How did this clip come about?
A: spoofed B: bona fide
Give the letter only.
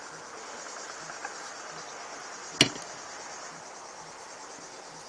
B